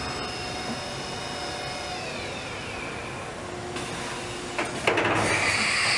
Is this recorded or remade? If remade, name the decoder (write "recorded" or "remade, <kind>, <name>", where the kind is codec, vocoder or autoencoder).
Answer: recorded